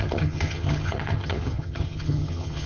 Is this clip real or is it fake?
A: fake